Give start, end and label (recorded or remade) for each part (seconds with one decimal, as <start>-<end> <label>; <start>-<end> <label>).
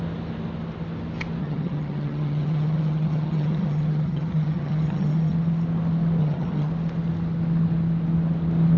0.0-1.4 recorded; 1.4-5.3 remade; 5.3-6.2 recorded; 6.2-6.7 remade; 6.7-8.8 recorded